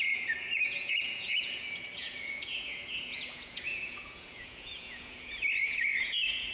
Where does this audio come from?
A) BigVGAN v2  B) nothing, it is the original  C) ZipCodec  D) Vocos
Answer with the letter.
D